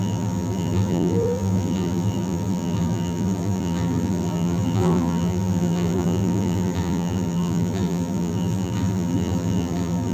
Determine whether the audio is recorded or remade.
remade